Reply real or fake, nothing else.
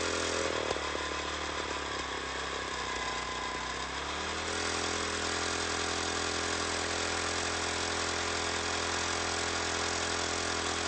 real